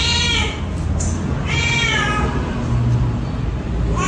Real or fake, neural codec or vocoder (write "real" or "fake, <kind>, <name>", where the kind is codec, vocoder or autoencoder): fake, vocoder, BigVGAN v2